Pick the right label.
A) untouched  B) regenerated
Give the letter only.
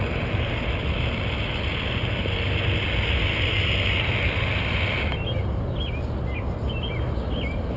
A